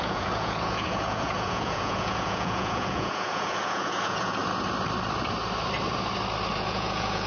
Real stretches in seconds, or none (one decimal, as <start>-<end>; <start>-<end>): 4.4-6.5